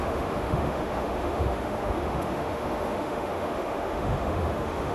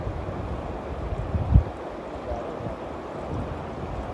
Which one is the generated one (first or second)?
first